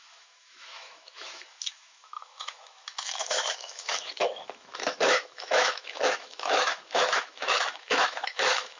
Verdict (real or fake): fake